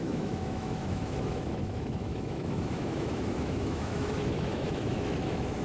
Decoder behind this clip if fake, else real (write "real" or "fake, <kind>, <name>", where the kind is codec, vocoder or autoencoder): fake, autoencoder, DAC-VAE